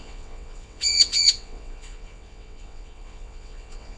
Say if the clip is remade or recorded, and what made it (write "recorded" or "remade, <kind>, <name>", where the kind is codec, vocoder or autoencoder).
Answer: remade, vocoder, WaveNeXt